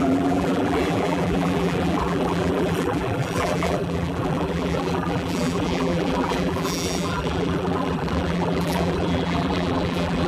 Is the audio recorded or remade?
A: remade